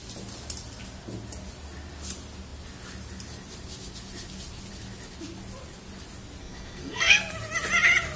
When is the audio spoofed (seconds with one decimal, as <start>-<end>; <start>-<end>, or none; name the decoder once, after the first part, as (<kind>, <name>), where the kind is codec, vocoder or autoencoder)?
6.4-7.2 (codec, SNAC)